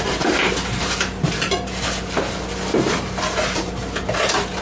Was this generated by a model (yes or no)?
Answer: yes